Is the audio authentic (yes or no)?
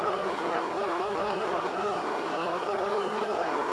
no